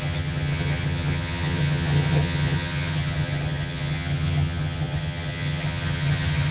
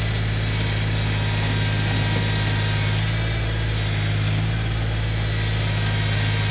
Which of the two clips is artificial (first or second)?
first